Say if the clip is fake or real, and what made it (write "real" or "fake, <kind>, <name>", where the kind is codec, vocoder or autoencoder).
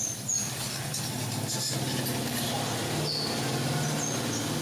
real